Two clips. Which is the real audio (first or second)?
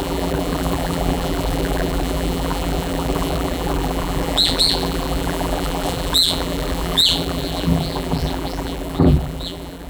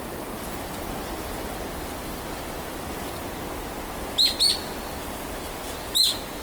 second